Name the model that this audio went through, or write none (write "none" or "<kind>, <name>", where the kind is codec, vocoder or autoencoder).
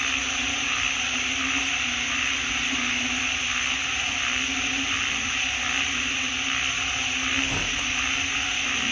none